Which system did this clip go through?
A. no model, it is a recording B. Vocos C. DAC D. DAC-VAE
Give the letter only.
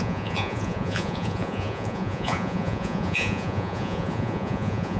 B